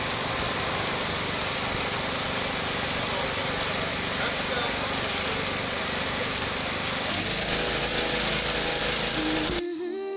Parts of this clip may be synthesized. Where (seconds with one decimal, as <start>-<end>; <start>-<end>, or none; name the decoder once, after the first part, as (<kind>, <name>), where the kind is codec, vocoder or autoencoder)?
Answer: none